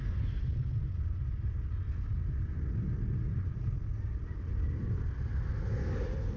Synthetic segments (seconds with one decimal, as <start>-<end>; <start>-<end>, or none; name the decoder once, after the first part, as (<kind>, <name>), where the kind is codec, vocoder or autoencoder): 4.5-5.3 (vocoder, BigVGAN v2)